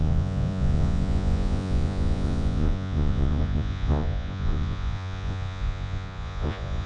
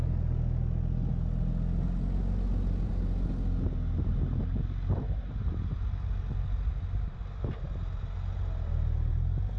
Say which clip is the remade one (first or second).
first